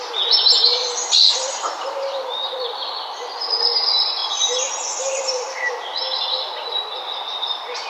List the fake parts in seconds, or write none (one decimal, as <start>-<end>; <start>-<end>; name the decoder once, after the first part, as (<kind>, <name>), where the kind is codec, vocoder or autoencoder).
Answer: 1.8-3.5 (vocoder, BigVGAN v2)